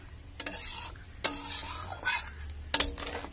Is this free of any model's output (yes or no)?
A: yes